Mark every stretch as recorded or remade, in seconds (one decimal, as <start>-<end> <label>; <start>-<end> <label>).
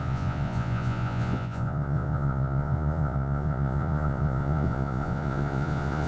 0.0-6.1 remade